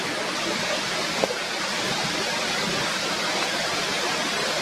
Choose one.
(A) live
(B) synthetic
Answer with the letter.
B